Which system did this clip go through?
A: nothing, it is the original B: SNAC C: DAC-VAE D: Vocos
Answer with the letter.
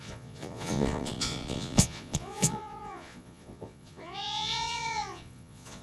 D